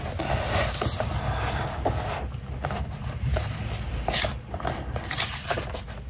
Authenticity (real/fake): real